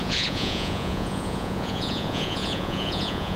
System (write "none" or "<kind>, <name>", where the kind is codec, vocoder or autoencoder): vocoder, Vocos